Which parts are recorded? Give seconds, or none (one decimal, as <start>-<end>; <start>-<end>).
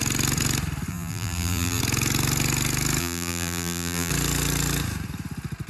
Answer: 0.0-0.9; 1.8-3.0; 4.1-5.7